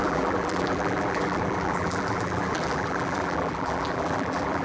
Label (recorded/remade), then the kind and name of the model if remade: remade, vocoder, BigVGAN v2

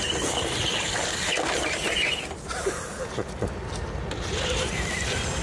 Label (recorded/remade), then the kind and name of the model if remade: remade, vocoder, BigVGAN v2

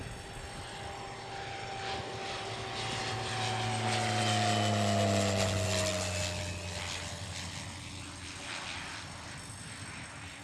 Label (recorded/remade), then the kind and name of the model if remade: recorded